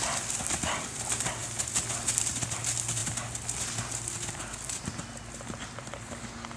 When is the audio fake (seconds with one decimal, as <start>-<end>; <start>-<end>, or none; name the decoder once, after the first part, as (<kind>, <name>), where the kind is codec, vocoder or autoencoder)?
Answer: none